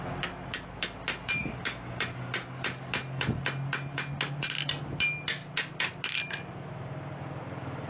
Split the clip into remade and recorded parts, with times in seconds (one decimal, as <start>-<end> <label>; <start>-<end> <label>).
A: 0.0-1.4 recorded; 1.4-2.0 remade; 2.0-7.9 recorded